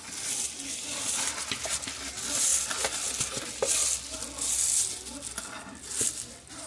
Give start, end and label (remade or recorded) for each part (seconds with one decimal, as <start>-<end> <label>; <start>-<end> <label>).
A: 0.0-6.7 recorded